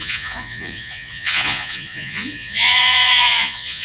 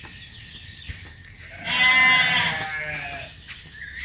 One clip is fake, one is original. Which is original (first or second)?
second